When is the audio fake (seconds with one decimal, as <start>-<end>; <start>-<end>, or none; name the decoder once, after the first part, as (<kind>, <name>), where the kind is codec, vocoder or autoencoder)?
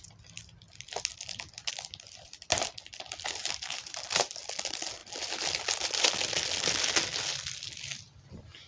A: 3.4-4.4 (vocoder, BigVGAN v2)